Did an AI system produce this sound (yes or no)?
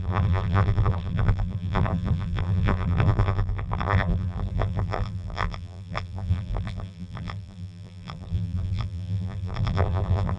yes